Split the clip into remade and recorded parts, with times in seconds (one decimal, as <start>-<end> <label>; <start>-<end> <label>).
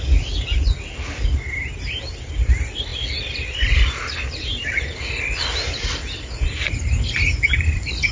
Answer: 0.0-8.1 recorded